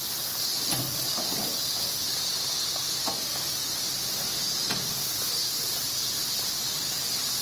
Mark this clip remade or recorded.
remade